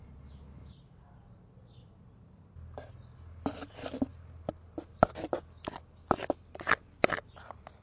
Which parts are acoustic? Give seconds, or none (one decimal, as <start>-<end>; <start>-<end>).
0.0-7.8